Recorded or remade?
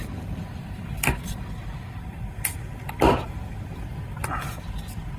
recorded